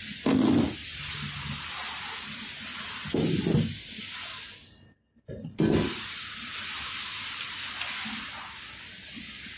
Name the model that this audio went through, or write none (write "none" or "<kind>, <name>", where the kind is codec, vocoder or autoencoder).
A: none